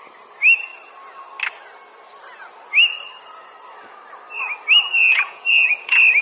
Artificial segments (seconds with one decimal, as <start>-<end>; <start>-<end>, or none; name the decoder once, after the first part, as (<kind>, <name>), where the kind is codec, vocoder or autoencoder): 5.0-5.7 (vocoder, Vocos)